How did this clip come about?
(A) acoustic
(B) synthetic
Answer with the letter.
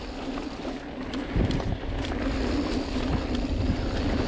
A